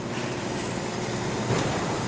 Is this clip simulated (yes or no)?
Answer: yes